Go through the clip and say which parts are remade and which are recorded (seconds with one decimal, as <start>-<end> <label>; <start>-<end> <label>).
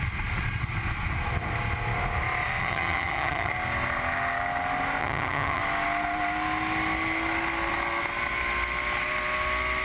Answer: 0.0-2.6 recorded; 2.6-3.5 remade; 3.5-5.0 recorded; 5.0-5.6 remade; 5.6-9.8 recorded